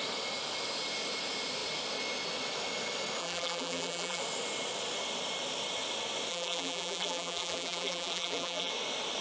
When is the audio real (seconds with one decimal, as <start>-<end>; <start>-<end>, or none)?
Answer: 0.0-3.2; 4.2-6.3; 8.7-9.2